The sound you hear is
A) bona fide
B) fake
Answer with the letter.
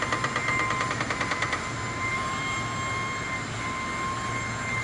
A